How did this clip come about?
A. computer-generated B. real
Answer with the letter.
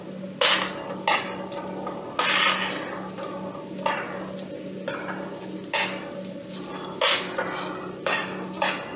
B